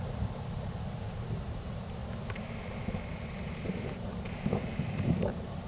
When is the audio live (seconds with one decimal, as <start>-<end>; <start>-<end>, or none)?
none